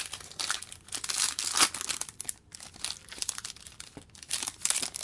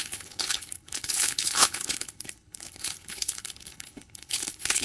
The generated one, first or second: second